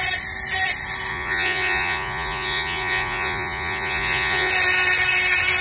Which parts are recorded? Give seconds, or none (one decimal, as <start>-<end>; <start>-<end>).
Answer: 0.0-1.1; 4.5-5.6